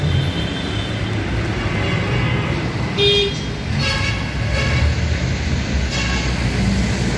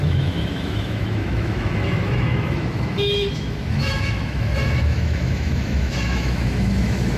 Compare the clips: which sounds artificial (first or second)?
second